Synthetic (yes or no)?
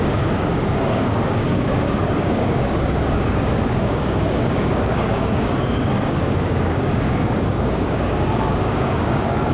yes